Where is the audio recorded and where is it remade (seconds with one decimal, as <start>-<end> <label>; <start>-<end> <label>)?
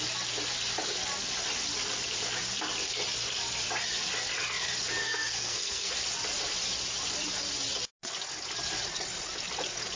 0.0-5.0 recorded; 5.0-5.9 remade; 5.9-10.0 recorded